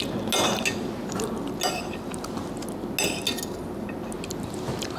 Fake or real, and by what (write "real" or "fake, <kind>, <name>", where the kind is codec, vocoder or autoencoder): real